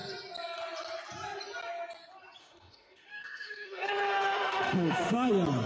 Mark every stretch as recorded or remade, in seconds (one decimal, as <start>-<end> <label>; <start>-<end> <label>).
0.0-2.4 recorded; 2.4-5.3 remade; 5.3-5.7 recorded